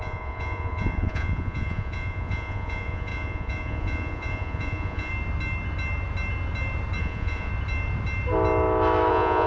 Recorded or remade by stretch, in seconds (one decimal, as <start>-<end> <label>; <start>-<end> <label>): 0.0-5.1 remade; 5.1-7.0 recorded; 7.0-7.5 remade; 7.5-9.1 recorded; 9.1-9.5 remade